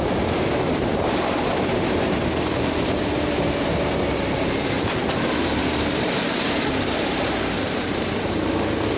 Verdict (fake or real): fake